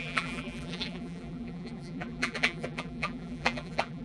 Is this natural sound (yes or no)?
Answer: no